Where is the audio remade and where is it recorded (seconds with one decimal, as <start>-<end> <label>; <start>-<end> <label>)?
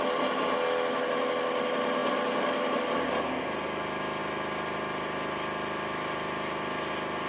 0.0-7.3 recorded